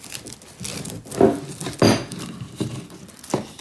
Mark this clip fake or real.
real